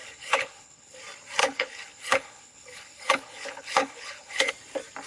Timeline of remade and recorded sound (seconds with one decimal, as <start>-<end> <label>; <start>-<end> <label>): 0.0-0.9 remade; 0.9-1.4 recorded; 1.4-4.5 remade; 4.5-5.1 recorded